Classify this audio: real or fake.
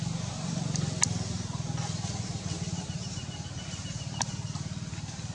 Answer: real